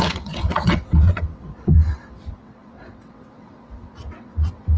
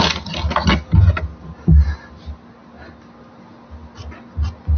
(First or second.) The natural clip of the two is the second